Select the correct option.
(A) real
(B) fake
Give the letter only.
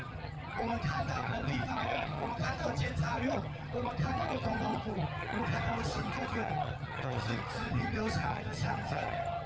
B